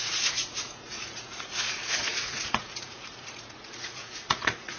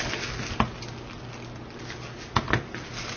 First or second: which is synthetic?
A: first